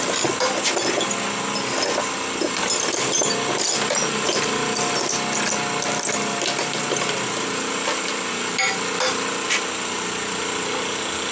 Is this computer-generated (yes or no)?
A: no